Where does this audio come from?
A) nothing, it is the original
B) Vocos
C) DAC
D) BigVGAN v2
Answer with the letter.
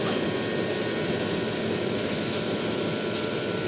A